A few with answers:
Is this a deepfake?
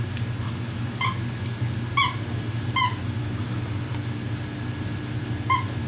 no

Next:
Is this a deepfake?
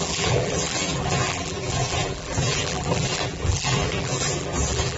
yes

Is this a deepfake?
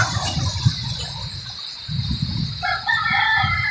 no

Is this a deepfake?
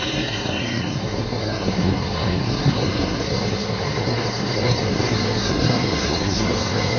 yes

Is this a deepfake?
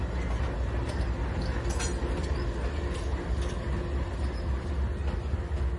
no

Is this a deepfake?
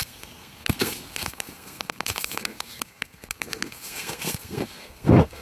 yes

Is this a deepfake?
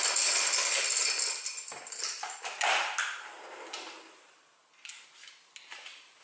no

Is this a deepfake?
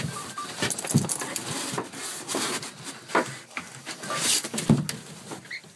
no